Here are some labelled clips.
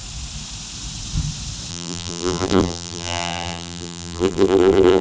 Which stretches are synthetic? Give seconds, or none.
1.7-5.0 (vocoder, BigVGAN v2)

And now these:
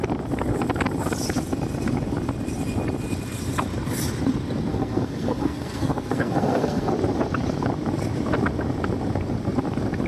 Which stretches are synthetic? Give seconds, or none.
4.7-6.9 (codec, SNAC)

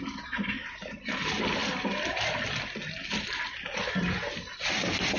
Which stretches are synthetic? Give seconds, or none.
none

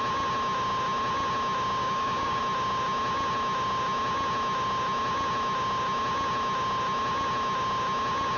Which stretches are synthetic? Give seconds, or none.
1.8-2.4 (codec, DAC)